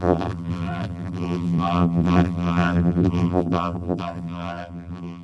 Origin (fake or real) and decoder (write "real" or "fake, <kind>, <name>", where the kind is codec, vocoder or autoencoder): fake, vocoder, BigVGAN v2